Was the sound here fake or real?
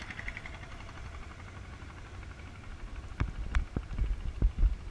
real